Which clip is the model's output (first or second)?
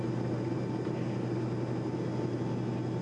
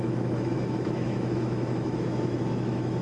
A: second